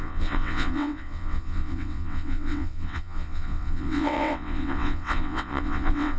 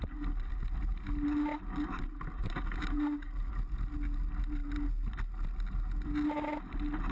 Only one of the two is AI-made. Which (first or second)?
first